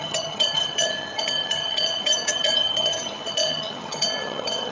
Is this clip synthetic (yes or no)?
yes